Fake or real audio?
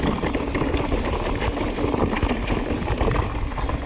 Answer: real